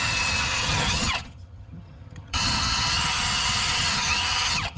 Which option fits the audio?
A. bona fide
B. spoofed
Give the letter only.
B